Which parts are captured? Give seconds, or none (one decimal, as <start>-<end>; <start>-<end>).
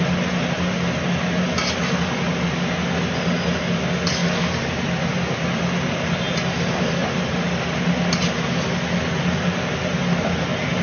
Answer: 0.0-4.2; 5.4-7.0; 7.5-10.8